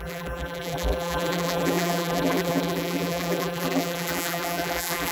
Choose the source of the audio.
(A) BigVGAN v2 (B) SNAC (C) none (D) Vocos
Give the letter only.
A